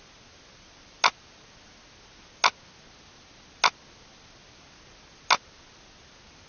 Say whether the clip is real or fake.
real